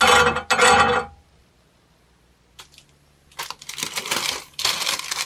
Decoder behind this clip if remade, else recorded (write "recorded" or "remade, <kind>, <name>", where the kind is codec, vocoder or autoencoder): recorded